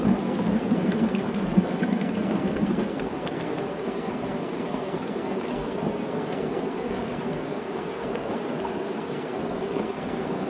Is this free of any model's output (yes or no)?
no